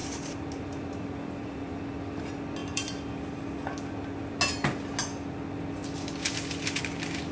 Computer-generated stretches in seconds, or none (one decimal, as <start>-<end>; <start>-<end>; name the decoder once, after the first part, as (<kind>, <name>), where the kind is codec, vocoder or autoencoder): 0.0-1.8 (vocoder, BigVGAN v2); 2.6-3.4